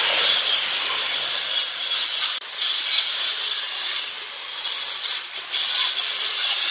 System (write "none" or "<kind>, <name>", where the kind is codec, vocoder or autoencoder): none